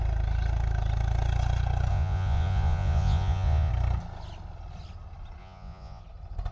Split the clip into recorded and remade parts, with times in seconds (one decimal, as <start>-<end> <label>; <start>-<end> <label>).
0.0-1.9 recorded; 1.9-3.7 remade; 3.7-5.4 recorded; 5.4-6.0 remade; 6.0-6.5 recorded